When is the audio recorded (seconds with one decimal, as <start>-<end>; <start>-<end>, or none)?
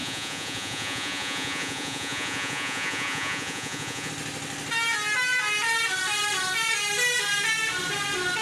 4.1-8.4